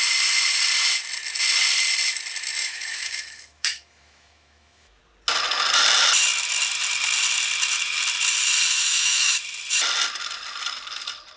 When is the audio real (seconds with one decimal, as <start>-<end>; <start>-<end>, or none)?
0.0-2.6; 5.0-8.8; 9.4-11.4